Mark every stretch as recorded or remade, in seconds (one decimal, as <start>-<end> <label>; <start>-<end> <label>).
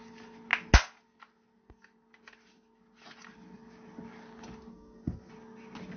0.0-4.7 recorded; 4.7-5.3 remade; 5.3-6.0 recorded